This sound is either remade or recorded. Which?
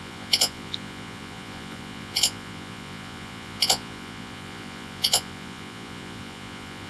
remade